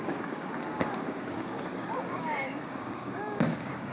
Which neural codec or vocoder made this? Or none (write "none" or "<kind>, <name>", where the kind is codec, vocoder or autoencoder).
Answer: codec, DAC